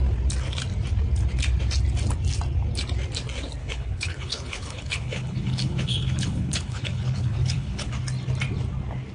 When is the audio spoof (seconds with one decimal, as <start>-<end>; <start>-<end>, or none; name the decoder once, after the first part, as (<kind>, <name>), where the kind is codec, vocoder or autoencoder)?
3.6-7.9 (codec, HILCodec)